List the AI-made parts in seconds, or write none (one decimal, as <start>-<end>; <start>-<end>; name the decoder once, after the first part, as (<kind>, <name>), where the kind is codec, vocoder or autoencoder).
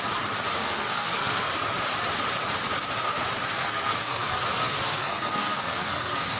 0.6-1.5 (codec, SNAC); 3.5-6.4